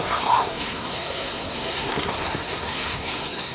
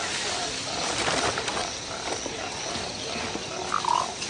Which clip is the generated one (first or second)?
first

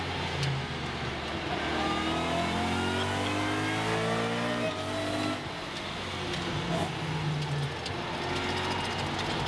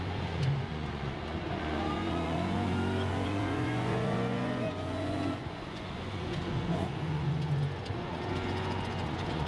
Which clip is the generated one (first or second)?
second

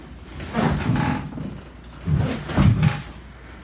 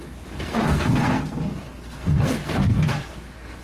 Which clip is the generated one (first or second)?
second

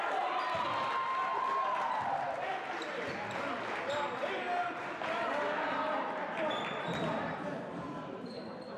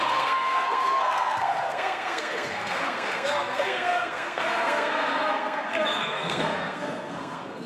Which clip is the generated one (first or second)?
second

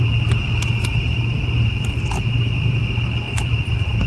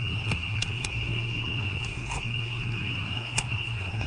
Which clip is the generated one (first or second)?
second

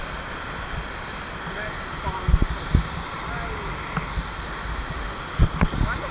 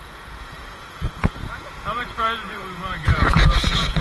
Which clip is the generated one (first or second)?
second